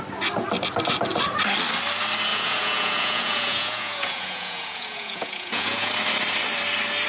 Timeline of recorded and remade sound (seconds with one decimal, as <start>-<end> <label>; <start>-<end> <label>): 0.0-2.3 recorded; 2.3-5.9 remade; 5.9-7.1 recorded